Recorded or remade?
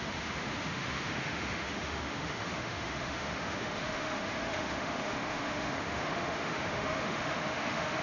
remade